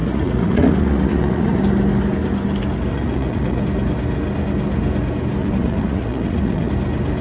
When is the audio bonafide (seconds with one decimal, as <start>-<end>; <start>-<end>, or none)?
1.6-2.9; 3.6-5.4; 6.7-7.2